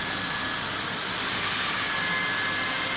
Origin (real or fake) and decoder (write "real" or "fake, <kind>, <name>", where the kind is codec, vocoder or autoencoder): real